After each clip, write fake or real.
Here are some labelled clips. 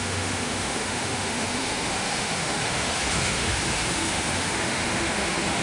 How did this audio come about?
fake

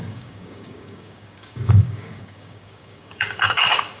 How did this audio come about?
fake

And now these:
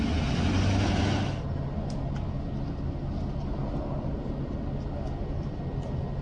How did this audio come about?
real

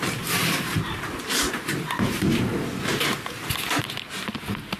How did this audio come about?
real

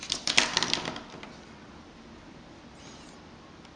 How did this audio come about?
real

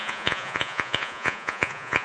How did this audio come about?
fake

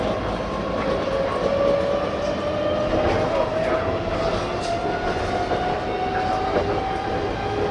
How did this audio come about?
real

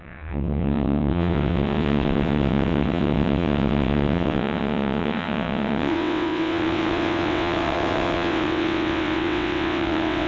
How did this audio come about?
fake